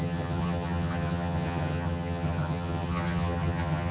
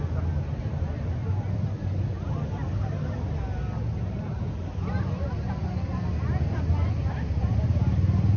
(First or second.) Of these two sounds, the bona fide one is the second